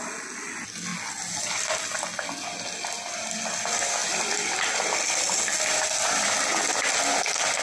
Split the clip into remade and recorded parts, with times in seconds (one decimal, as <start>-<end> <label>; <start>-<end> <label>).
0.0-7.6 recorded